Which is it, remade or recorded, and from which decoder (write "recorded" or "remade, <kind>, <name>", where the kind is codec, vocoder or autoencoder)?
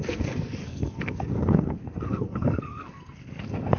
remade, codec, SNAC